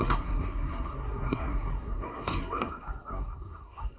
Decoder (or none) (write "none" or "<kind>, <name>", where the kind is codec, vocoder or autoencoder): codec, SNAC